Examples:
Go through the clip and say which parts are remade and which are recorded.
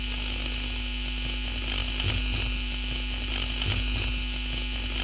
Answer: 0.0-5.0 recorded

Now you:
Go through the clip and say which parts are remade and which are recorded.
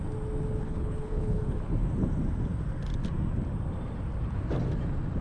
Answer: 0.0-0.6 recorded; 0.6-1.7 remade; 1.7-5.2 recorded